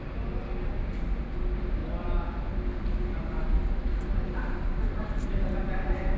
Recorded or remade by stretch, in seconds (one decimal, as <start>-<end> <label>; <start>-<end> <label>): 0.0-6.2 recorded